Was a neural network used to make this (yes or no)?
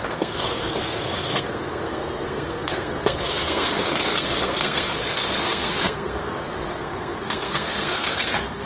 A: yes